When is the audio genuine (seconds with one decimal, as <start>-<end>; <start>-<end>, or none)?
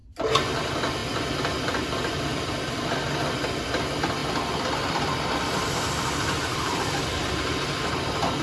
0.0-4.2; 7.0-8.4